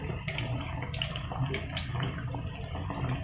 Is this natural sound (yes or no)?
yes